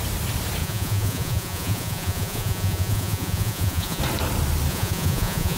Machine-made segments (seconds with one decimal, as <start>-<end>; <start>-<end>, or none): 0.6-4.0; 4.7-5.6